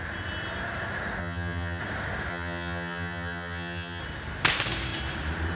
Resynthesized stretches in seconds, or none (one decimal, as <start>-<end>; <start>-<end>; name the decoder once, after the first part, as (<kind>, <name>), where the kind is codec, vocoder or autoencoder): 1.2-1.8 (vocoder, HiFi-GAN); 2.3-4.0